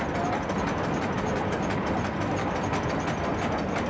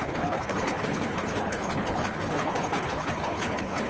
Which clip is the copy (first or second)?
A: second